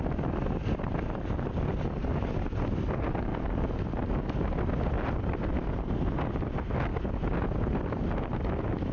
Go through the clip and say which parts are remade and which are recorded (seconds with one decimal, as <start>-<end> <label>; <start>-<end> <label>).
0.0-8.9 recorded